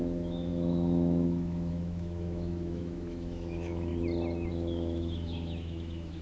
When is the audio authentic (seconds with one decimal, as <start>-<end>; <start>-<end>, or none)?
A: 3.9-4.5